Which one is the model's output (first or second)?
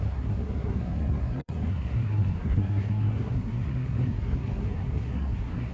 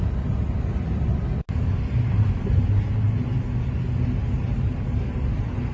first